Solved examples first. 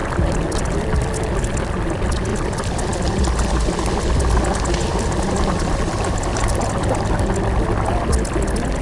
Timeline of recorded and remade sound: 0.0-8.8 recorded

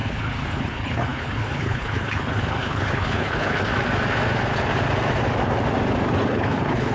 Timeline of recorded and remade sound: 0.0-3.7 remade; 3.7-6.1 recorded; 6.1-6.9 remade

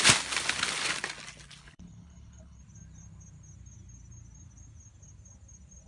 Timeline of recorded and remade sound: 0.0-1.6 recorded; 1.6-2.6 remade; 2.6-5.9 recorded

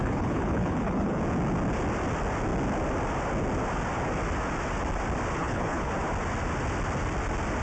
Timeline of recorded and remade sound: 0.0-1.2 remade; 1.2-5.4 recorded; 5.4-5.9 remade; 5.9-7.6 recorded

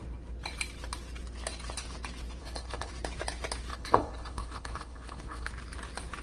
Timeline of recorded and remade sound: 0.0-2.4 recorded; 2.4-2.9 remade; 2.9-3.7 recorded; 3.7-5.5 remade; 5.5-6.2 recorded

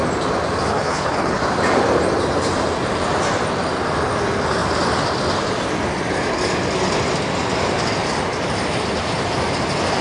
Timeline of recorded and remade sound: 0.0-0.7 recorded; 0.7-1.4 remade; 1.4-10.0 recorded